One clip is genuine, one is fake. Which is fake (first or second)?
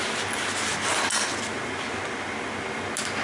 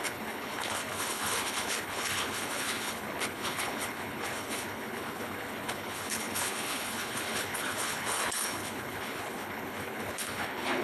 second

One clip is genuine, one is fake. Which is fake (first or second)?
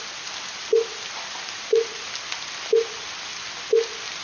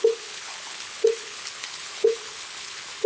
second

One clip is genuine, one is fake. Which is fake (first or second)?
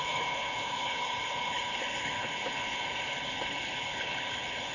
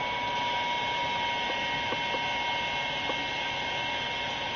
first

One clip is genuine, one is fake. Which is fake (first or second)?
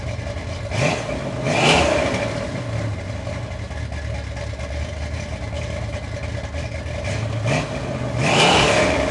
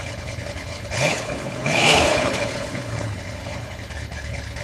second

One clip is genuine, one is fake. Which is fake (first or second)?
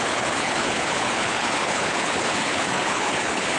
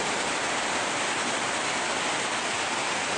first